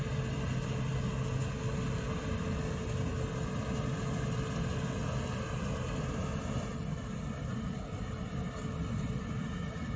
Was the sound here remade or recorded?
recorded